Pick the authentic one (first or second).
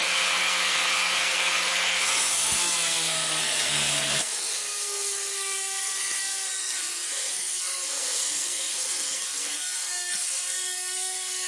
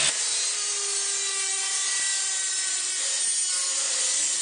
second